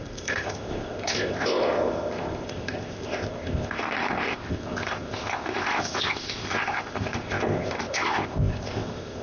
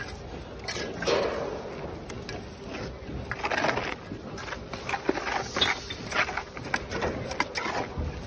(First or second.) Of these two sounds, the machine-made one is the first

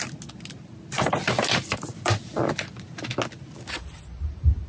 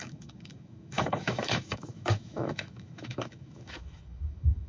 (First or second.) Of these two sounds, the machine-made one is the second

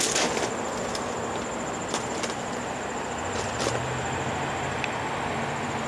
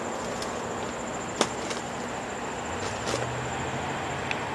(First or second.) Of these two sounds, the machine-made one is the first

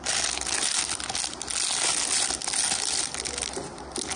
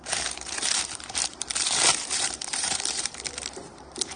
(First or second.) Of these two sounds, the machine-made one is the second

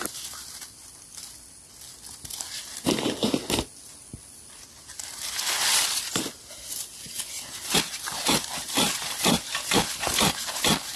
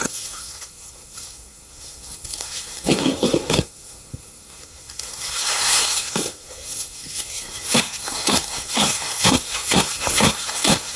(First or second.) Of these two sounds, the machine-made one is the second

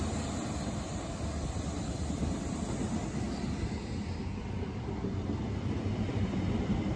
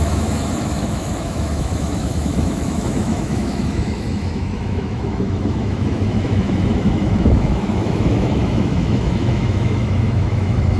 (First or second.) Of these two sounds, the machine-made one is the second